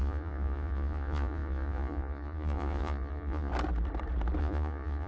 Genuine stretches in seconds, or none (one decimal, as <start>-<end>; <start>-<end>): 3.5-4.4